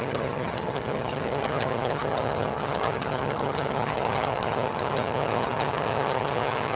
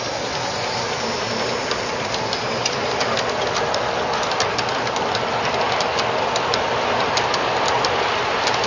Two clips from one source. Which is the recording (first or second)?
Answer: second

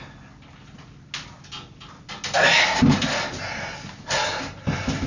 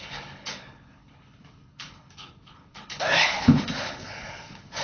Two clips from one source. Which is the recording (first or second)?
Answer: first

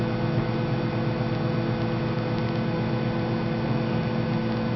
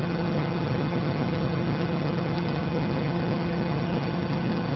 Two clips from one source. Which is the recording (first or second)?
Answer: first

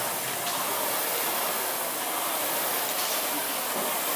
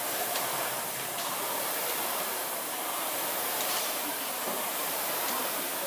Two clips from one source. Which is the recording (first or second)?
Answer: first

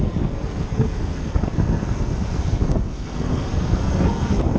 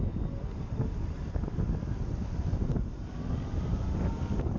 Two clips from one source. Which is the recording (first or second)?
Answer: second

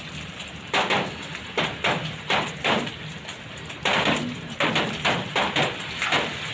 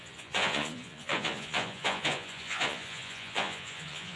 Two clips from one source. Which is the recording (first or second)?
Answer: first